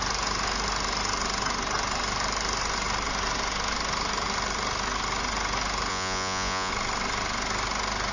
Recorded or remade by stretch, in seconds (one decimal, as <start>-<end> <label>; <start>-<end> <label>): 0.0-5.9 recorded; 5.9-6.7 remade; 6.7-8.1 recorded